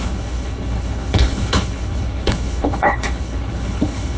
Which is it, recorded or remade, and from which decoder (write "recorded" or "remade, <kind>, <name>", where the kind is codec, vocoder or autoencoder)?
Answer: remade, codec, HILCodec